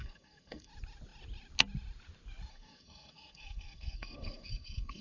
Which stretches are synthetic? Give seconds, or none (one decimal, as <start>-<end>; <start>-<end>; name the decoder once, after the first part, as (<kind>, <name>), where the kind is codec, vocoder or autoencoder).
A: 0.0-0.7 (codec, SNAC); 2.5-5.0